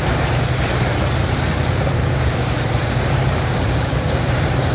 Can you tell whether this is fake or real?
fake